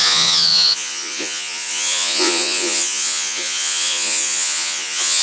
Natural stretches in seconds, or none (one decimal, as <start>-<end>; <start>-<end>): none